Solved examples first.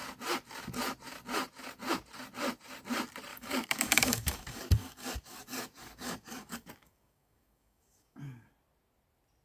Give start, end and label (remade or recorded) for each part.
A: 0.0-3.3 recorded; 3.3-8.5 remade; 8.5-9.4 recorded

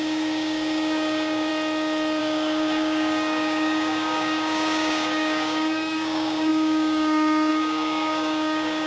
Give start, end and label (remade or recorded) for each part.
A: 0.0-1.5 remade; 1.5-2.2 recorded; 2.2-8.9 remade

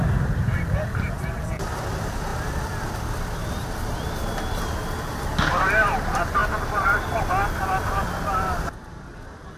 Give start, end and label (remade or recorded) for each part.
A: 0.0-2.3 recorded; 2.3-3.5 remade; 3.5-9.6 recorded

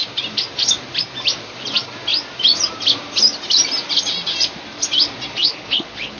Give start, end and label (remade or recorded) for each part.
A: 0.0-5.4 recorded; 5.4-6.2 remade

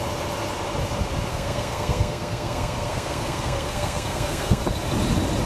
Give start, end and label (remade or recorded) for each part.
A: 0.0-1.3 recorded; 1.3-4.6 remade; 4.6-5.5 recorded